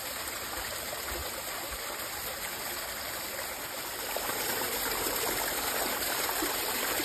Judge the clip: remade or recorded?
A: remade